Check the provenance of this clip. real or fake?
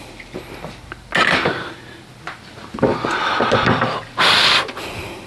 real